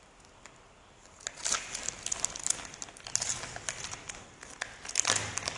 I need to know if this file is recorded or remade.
recorded